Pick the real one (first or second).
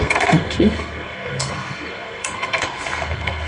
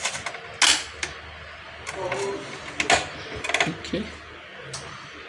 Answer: second